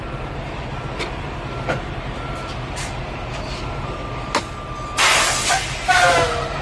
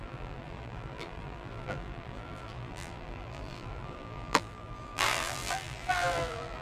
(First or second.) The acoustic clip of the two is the first